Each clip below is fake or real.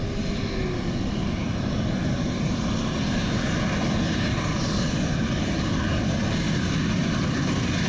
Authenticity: real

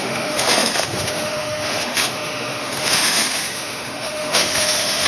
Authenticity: fake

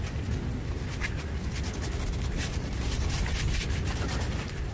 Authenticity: real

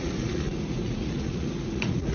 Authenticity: fake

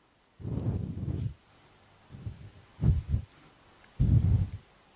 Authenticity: real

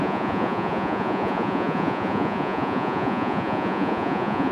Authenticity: fake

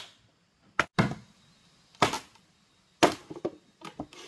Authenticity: real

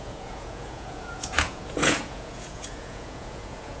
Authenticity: fake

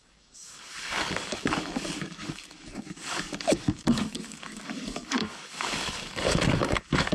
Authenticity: fake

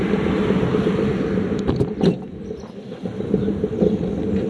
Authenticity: real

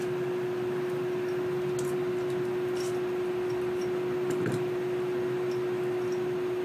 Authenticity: real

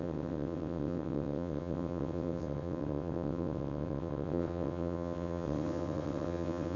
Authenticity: fake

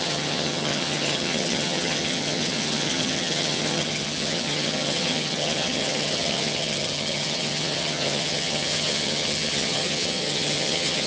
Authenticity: fake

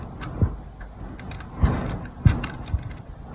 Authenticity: real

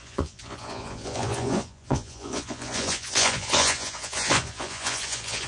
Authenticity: fake